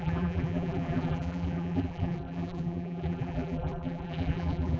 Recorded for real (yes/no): no